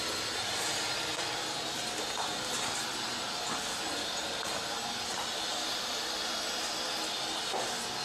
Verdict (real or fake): real